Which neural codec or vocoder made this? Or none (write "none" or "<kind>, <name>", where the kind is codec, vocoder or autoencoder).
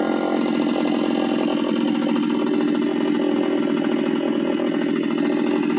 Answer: none